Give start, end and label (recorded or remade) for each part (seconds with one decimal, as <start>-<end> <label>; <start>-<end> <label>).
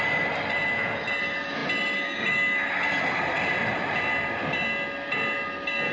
0.0-0.6 remade; 0.6-1.2 recorded; 1.2-1.6 remade; 1.6-3.0 recorded; 3.0-4.1 remade; 4.1-5.9 recorded